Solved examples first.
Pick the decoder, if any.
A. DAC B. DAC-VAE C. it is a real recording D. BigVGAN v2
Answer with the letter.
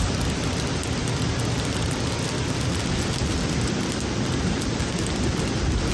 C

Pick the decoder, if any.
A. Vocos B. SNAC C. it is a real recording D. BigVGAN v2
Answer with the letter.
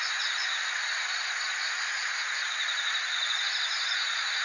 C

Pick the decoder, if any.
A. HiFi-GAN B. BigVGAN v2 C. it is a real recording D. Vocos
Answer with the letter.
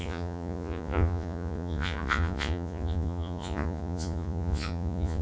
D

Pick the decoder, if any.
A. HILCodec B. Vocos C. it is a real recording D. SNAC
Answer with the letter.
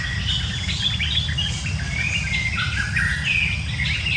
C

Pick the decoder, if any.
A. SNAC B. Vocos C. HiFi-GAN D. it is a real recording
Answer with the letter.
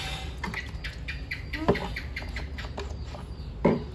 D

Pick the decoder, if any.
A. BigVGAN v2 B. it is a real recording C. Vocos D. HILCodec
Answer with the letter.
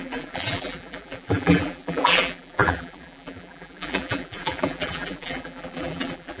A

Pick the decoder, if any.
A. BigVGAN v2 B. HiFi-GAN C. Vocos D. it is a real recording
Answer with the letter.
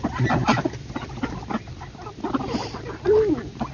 D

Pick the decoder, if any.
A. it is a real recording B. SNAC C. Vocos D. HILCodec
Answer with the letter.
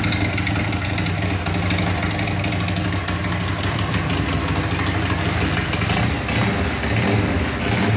A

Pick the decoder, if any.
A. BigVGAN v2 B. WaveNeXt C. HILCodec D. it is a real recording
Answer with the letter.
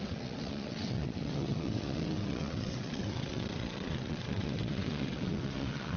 B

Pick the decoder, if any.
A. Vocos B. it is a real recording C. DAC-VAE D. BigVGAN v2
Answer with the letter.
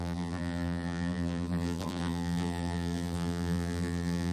D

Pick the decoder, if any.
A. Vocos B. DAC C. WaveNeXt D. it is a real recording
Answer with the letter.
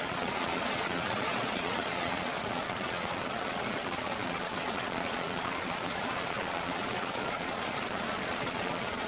A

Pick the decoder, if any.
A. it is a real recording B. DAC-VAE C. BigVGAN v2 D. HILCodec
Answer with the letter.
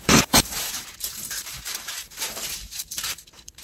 C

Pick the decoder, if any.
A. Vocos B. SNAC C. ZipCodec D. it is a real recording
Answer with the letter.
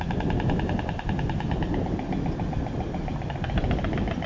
D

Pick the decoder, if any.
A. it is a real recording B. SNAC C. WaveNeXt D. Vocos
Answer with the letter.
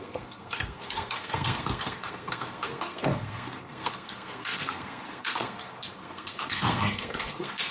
B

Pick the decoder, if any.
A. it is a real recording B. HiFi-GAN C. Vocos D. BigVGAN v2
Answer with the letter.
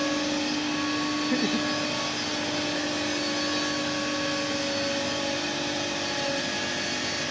A